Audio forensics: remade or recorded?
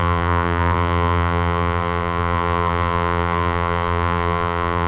remade